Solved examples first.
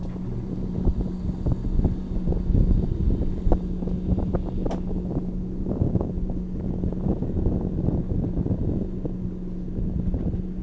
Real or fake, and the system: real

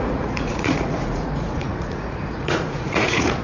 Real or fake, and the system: fake, vocoder, Vocos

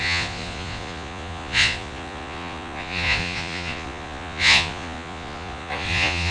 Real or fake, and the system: fake, vocoder, Vocos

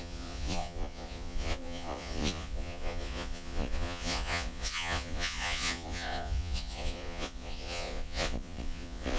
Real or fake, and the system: fake, vocoder, Vocos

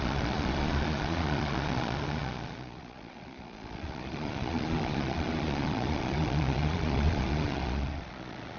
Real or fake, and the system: fake, vocoder, Vocos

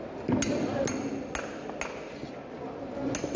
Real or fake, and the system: real